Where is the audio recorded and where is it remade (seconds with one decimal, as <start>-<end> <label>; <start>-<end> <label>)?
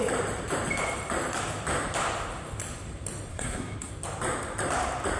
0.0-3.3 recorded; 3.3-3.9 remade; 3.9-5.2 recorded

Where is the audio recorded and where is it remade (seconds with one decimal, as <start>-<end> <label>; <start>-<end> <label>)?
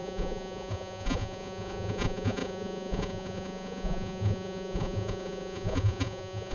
0.0-6.5 remade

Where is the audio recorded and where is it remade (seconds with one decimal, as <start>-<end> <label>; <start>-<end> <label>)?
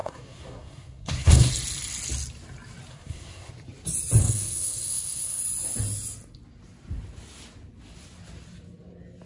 0.0-1.5 remade; 1.5-2.9 recorded; 2.9-3.5 remade; 3.5-4.2 recorded; 4.2-5.4 remade; 5.4-9.3 recorded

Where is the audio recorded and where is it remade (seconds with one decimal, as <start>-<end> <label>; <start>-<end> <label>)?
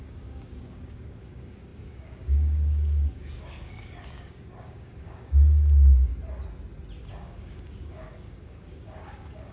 0.0-6.1 remade; 6.1-7.1 recorded; 7.1-9.5 remade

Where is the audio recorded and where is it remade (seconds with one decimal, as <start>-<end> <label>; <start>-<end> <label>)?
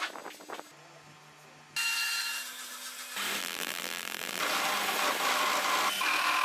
0.0-3.4 recorded; 3.4-4.4 remade; 4.4-6.4 recorded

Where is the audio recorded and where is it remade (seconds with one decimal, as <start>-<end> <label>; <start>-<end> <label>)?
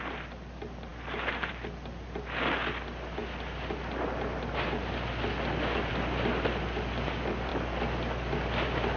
0.0-9.0 recorded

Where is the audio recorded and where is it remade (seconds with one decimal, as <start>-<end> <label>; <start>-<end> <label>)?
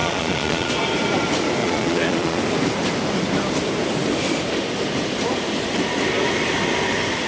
0.0-0.7 remade; 0.7-1.6 recorded; 1.6-2.4 remade; 2.4-7.3 recorded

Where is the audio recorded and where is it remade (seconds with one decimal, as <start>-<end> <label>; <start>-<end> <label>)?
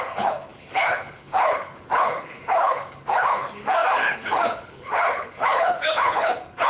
0.0-6.7 remade